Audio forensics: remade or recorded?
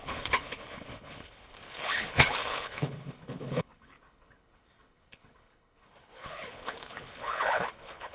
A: remade